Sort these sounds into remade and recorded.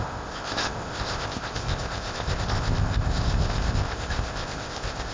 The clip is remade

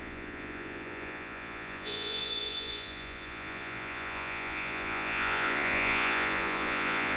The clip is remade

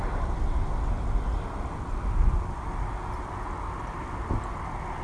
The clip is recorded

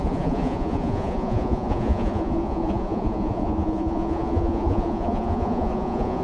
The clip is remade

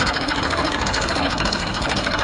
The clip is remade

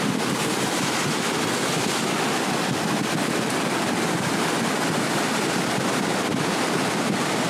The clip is recorded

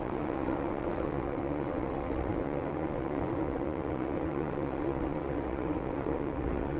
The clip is remade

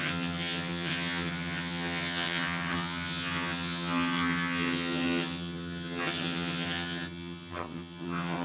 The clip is remade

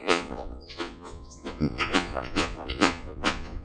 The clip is remade